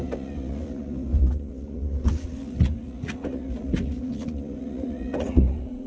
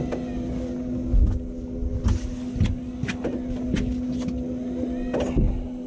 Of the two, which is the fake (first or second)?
first